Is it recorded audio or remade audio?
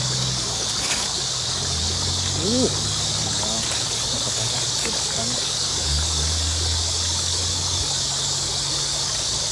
remade